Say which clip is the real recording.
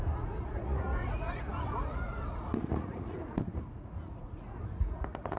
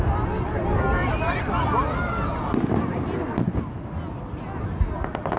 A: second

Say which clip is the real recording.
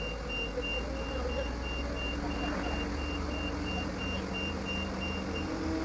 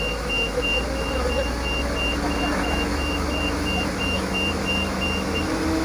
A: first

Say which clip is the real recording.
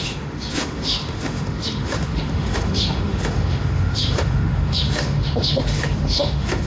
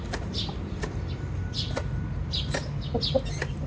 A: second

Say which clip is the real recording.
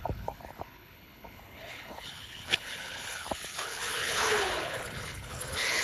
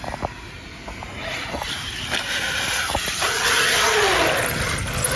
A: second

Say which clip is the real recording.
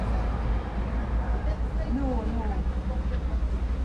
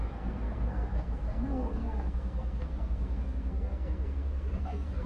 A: first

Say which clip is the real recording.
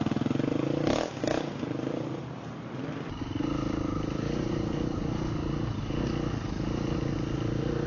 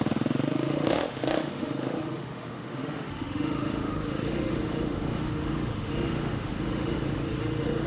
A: first